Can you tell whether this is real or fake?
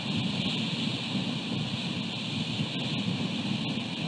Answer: real